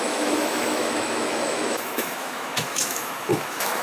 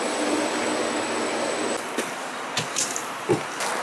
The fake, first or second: first